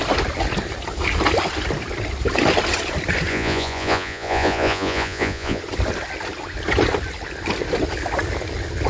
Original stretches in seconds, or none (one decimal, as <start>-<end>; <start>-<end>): 0.0-3.3; 5.6-8.9